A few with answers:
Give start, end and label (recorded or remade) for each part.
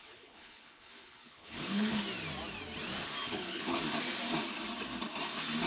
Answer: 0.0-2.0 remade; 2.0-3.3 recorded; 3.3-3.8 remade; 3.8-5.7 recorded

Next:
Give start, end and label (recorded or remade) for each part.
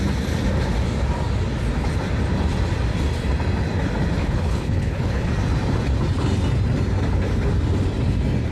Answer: 0.0-4.2 recorded; 4.2-5.3 remade; 5.3-8.5 recorded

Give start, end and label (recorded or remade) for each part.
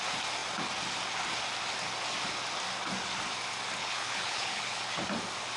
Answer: 0.0-3.8 recorded; 3.8-4.8 remade; 4.8-5.6 recorded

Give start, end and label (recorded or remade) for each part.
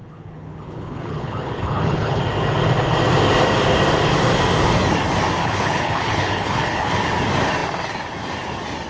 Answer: 0.0-2.2 remade; 2.2-5.4 recorded; 5.4-6.9 remade; 6.9-8.9 recorded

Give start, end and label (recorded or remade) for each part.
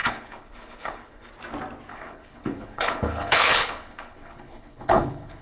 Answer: 0.0-1.3 remade; 1.3-1.9 recorded; 1.9-5.4 remade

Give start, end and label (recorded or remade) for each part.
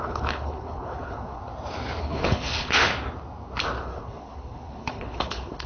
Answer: 0.0-1.4 remade; 1.4-2.0 recorded; 2.0-2.9 remade; 2.9-3.8 recorded; 3.8-5.7 remade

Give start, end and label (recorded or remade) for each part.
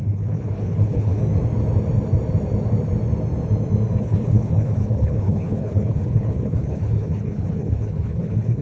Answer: 0.0-1.2 remade; 1.2-4.0 recorded; 4.0-8.6 remade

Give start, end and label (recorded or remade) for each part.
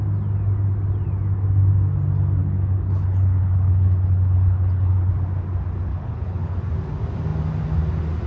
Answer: 0.0-2.4 recorded; 2.4-5.1 remade; 5.1-5.9 recorded; 5.9-6.6 remade; 6.6-8.3 recorded